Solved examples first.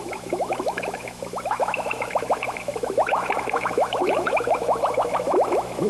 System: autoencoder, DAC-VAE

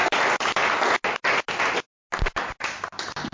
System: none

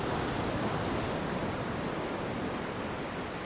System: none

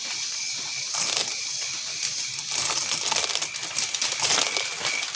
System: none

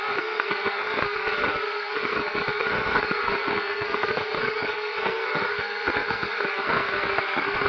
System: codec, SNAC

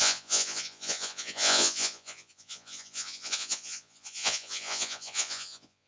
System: vocoder, Vocos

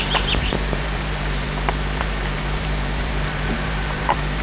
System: vocoder, BigVGAN v2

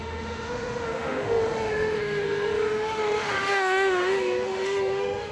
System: autoencoder, DAC-VAE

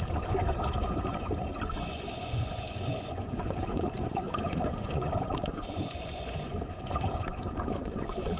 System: vocoder, Vocos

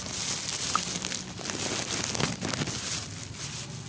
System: none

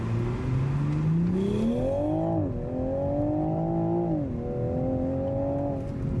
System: none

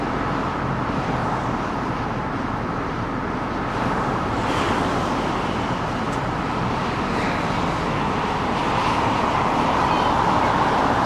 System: vocoder, BigVGAN v2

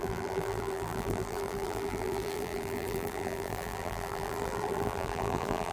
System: vocoder, BigVGAN v2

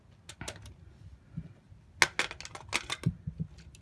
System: none